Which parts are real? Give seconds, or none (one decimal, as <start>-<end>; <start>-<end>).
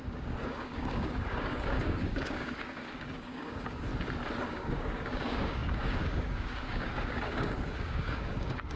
3.9-4.5